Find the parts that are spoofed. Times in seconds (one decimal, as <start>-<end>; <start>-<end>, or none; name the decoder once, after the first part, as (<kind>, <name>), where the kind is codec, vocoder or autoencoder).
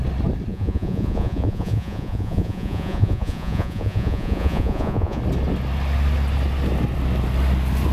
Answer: 0.5-5.2 (vocoder, Vocos)